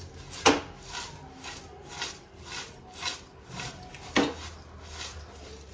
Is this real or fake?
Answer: real